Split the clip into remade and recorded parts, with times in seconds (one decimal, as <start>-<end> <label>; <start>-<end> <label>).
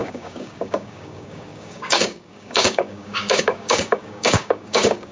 0.0-5.1 remade